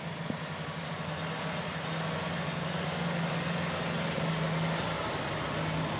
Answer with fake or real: real